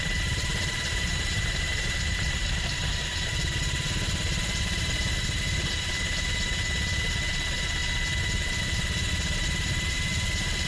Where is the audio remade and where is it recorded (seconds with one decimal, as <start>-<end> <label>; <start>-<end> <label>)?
0.0-7.8 remade; 7.8-8.6 recorded; 8.6-10.7 remade